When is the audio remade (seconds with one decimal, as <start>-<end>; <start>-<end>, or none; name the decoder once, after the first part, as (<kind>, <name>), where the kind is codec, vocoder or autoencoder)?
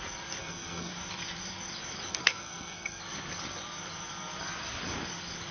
0.4-0.9 (codec, SNAC); 2.1-3.0